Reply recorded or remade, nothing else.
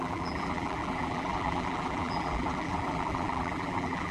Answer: remade